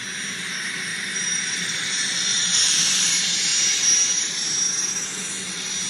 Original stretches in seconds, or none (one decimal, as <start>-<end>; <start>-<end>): 0.0-0.9; 1.9-2.3; 3.1-5.9